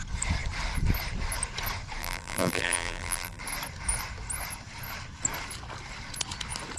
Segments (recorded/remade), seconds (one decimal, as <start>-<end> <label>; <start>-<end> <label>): 0.0-2.0 recorded; 2.0-3.4 remade; 3.4-6.8 recorded